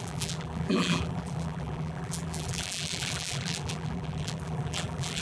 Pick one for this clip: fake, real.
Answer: fake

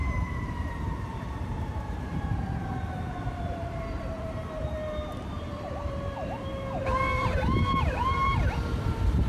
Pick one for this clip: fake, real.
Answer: fake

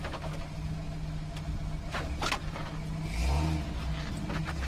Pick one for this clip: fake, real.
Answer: real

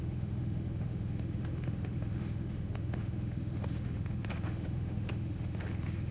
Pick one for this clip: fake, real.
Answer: fake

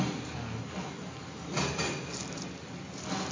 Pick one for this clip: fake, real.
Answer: real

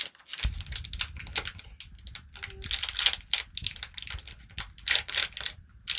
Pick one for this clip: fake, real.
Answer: real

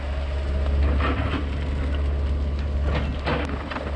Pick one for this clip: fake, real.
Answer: real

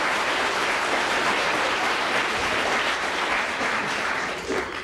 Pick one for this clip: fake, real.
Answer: fake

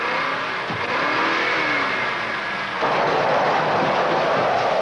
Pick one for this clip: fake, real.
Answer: real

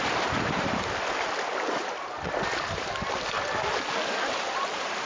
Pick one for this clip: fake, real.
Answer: real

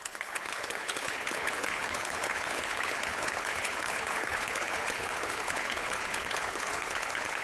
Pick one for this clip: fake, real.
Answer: fake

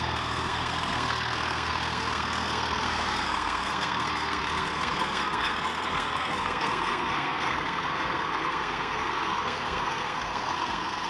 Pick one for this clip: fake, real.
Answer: fake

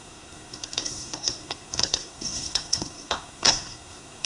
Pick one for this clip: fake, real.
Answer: fake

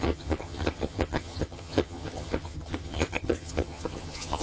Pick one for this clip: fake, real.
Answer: fake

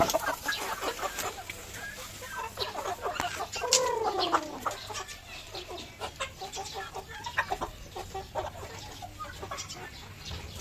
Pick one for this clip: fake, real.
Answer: real